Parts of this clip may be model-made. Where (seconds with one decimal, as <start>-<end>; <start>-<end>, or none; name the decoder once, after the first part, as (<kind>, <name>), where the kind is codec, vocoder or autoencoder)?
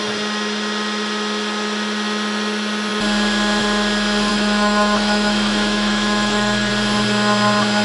4.3-6.7 (autoencoder, DAC-VAE)